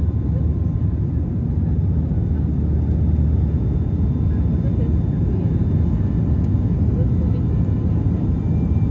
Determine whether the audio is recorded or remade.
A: recorded